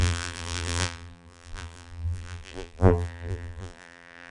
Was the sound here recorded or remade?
remade